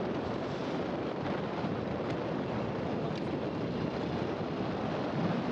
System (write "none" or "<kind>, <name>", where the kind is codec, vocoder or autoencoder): vocoder, BigVGAN v2